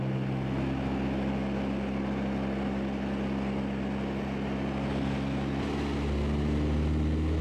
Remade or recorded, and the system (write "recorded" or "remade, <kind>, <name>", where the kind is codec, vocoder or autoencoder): recorded